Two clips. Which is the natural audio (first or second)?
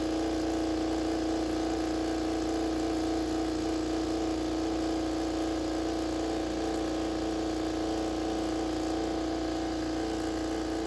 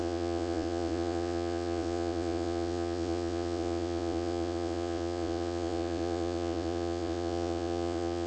first